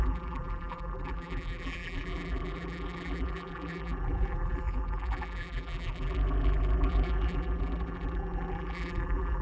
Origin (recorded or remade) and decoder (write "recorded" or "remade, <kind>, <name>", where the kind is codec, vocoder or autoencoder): remade, vocoder, BigVGAN v2